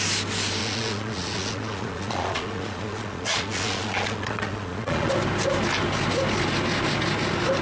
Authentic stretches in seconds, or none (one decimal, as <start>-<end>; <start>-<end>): 0.0-0.6; 5.1-7.6